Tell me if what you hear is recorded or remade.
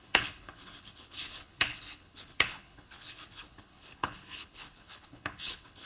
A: remade